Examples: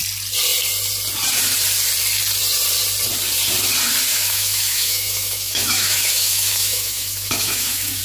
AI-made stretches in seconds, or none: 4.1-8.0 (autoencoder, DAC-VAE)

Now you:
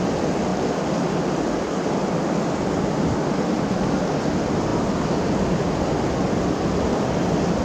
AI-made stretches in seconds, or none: none

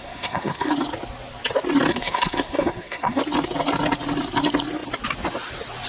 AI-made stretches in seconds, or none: 0.0-0.7 (codec, SNAC); 1.9-3.2

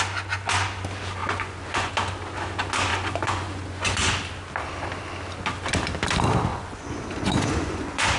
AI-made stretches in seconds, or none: 1.2-1.9 (vocoder, Vocos); 2.9-4.1; 6.5-8.2

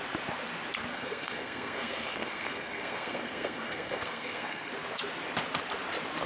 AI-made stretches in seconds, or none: 0.9-4.7 (codec, SNAC)

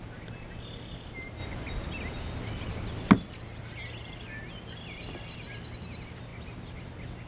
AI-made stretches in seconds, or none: none

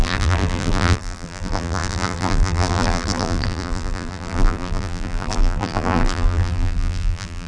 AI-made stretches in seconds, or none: 0.0-7.5 (vocoder, BigVGAN v2)

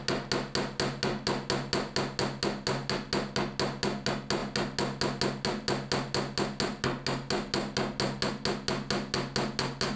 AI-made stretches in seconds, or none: none